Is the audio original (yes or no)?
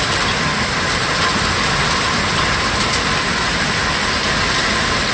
yes